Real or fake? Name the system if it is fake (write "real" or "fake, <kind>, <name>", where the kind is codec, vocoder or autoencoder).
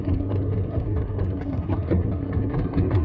fake, codec, SNAC